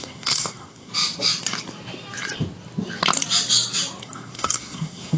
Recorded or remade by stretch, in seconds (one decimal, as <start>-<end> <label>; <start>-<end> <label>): 0.0-0.9 remade; 0.9-4.0 recorded; 4.0-5.2 remade